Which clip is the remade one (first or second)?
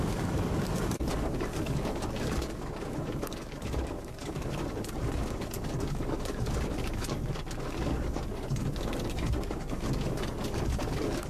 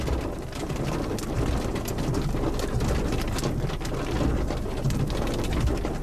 first